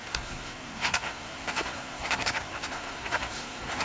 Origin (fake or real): fake